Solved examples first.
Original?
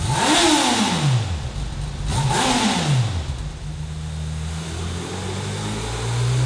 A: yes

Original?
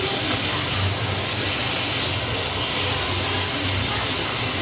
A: yes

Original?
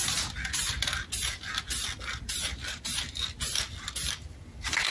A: yes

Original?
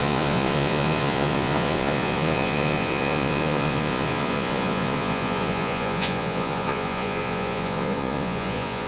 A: no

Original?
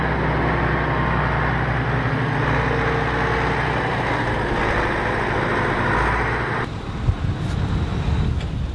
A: yes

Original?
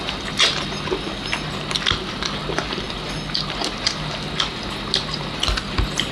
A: yes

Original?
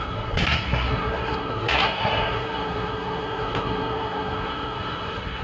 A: no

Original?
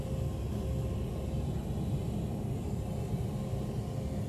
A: yes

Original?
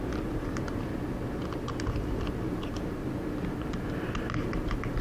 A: yes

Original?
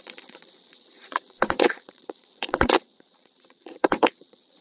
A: no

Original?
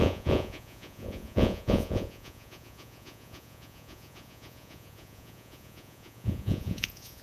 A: no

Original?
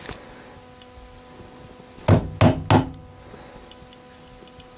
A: yes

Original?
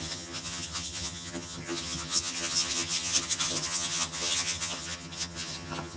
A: no